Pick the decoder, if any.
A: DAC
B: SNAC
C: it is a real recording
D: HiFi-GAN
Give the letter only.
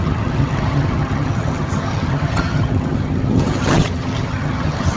D